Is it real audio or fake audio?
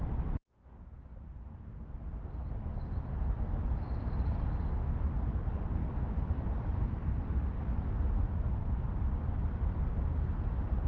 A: real